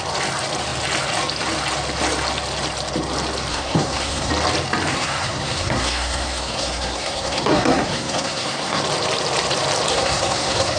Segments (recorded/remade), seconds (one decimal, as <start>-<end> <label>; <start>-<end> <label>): 0.0-3.5 recorded; 3.5-4.3 remade; 4.3-4.9 recorded; 4.9-8.8 remade; 8.8-9.9 recorded; 9.9-10.8 remade